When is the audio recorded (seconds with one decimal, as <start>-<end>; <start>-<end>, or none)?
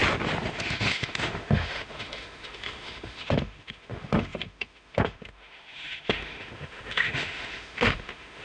0.0-0.5